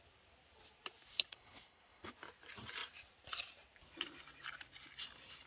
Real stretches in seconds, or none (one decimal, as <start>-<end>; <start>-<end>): 0.0-1.3; 2.1-5.5